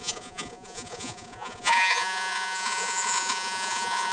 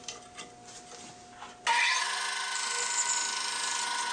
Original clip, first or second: second